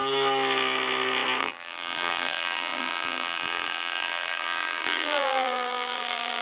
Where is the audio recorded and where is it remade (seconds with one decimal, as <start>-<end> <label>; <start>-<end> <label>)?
0.0-1.4 recorded; 1.4-6.4 remade